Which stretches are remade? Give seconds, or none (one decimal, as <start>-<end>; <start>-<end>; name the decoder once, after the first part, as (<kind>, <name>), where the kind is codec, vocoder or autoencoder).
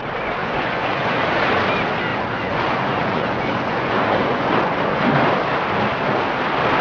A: 0.4-1.2 (vocoder, Vocos); 2.1-5.0